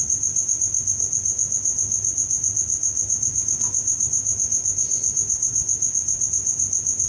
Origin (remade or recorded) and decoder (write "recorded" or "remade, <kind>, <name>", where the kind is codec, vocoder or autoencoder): recorded